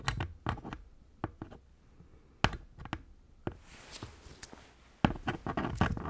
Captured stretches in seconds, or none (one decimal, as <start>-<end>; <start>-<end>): 0.0-6.1